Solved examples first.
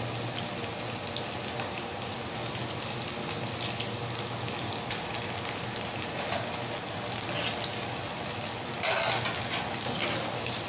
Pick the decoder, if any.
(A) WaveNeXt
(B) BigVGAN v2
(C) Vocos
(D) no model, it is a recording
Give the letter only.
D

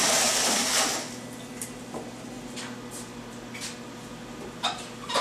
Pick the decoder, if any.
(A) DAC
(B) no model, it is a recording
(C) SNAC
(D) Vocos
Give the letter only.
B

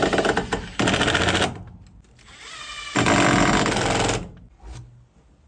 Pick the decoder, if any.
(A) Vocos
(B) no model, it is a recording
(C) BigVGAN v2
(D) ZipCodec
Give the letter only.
B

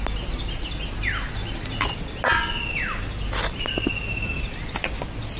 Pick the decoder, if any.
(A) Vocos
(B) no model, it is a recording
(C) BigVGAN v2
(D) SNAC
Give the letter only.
B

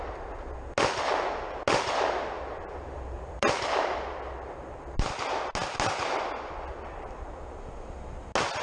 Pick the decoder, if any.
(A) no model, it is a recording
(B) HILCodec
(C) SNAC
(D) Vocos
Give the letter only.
A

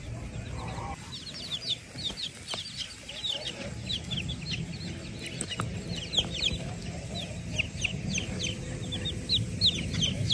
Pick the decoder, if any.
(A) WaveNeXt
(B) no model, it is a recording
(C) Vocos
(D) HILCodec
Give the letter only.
B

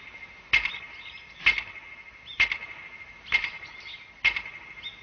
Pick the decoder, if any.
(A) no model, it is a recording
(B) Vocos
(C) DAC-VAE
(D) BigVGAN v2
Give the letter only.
A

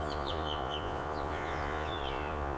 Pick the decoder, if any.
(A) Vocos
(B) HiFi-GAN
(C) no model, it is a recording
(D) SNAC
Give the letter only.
A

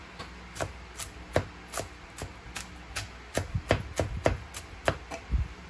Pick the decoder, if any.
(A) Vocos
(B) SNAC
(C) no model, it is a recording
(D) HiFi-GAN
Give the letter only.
C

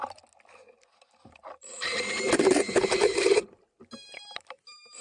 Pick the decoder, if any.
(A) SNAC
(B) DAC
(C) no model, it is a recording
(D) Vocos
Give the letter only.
C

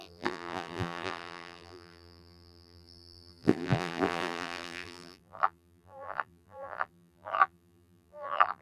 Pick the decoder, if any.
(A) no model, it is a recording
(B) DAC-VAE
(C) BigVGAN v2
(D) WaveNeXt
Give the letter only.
C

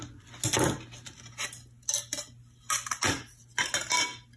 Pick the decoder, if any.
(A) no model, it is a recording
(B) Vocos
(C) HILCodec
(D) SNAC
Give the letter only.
A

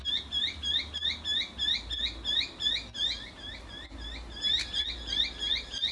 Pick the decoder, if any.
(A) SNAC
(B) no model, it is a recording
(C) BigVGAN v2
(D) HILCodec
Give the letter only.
B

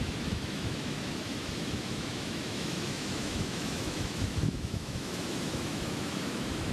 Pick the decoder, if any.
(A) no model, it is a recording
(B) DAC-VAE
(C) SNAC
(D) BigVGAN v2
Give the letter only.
B